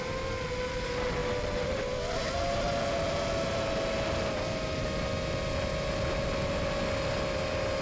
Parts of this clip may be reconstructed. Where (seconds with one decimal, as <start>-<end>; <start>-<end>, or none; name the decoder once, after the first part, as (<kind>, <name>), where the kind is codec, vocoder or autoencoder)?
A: none